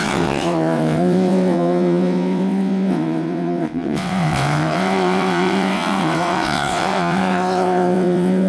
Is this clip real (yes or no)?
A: no